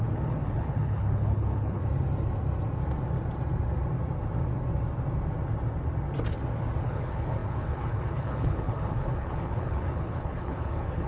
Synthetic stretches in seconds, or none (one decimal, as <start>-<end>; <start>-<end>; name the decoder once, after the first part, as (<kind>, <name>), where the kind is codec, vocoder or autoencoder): 0.0-1.8 (codec, HILCodec); 6.8-11.1

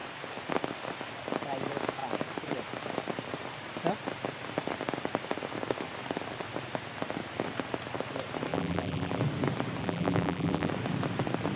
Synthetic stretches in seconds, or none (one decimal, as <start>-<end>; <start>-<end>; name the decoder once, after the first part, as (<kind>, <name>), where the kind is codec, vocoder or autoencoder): 8.5-9.2 (vocoder, BigVGAN v2); 9.8-10.7

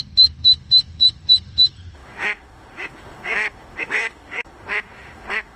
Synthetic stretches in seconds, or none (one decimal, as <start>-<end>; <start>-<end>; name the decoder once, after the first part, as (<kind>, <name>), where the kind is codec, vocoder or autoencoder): 0.0-5.6 (autoencoder, DAC-VAE)

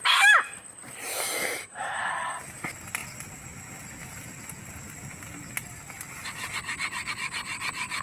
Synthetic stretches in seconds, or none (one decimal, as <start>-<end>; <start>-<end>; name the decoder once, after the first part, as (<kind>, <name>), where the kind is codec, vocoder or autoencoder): 1.1-2.1 (autoencoder, DAC-VAE)